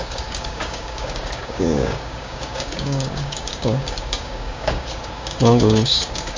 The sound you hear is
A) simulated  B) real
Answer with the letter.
A